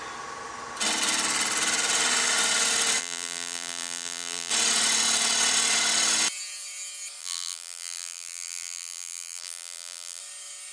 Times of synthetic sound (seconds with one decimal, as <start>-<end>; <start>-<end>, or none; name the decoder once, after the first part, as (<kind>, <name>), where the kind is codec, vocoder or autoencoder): 3.0-4.5 (vocoder, BigVGAN v2); 7.2-10.2

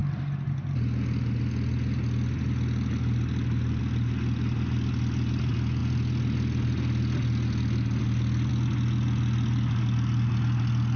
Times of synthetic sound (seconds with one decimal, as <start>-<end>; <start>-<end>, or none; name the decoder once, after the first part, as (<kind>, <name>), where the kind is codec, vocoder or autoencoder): none

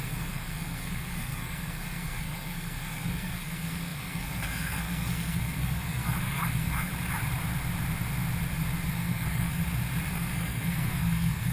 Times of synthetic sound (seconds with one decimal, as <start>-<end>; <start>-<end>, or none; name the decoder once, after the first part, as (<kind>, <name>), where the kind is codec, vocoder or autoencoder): 0.0-6.9 (codec, SNAC); 8.9-9.6; 10.1-11.5

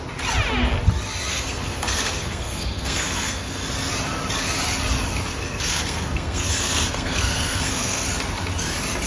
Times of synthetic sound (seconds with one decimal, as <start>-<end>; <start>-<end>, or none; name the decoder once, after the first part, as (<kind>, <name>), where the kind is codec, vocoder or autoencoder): 1.3-3.6 (codec, SNAC); 5.3-8.0

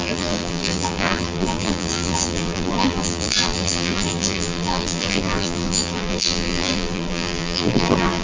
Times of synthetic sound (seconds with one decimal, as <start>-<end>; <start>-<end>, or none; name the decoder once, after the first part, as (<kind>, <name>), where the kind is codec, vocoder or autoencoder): 0.0-8.2 (vocoder, BigVGAN v2)

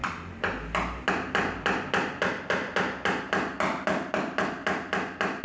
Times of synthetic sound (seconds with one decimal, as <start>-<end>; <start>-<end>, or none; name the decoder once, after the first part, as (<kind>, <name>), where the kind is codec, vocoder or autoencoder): none